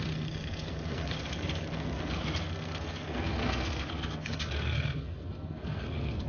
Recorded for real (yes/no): no